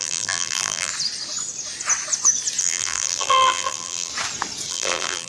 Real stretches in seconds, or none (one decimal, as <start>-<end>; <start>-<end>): 0.9-2.6; 4.1-4.7